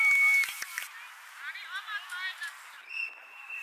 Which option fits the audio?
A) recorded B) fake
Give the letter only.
A